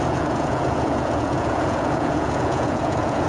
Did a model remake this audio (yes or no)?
yes